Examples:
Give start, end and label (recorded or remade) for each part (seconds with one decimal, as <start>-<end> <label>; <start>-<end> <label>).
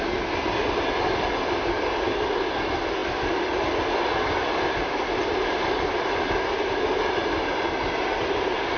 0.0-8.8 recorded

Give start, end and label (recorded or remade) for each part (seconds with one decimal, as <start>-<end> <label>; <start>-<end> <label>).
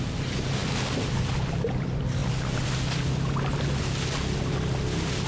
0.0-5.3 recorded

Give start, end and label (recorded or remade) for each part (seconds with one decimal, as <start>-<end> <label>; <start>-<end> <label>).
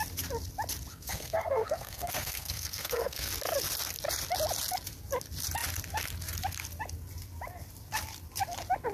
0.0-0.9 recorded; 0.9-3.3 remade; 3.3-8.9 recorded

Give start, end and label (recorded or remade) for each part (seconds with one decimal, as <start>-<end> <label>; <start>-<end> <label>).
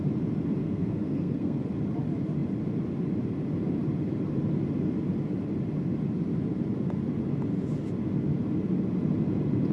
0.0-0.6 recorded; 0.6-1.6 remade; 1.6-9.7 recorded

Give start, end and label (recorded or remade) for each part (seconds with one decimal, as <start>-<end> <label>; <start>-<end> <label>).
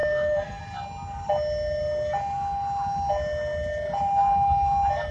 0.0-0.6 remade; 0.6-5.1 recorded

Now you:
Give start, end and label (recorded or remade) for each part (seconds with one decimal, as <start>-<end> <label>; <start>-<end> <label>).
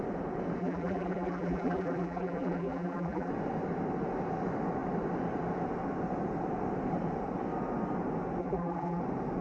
0.0-0.6 recorded; 0.6-3.3 remade; 3.3-8.4 recorded; 8.4-9.0 remade; 9.0-9.4 recorded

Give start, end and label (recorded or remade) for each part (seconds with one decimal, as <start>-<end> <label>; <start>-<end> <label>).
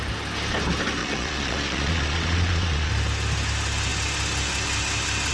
0.0-1.0 recorded; 1.0-2.9 remade; 2.9-5.3 recorded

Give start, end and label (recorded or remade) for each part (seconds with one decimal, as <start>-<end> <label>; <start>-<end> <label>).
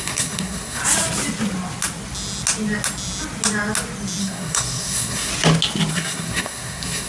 0.0-0.8 remade; 0.8-4.2 recorded; 4.2-5.3 remade; 5.3-5.9 recorded; 5.9-7.1 remade